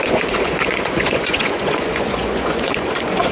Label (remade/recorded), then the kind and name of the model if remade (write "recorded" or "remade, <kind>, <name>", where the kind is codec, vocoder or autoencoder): remade, vocoder, Vocos